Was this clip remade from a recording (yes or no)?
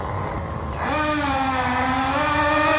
no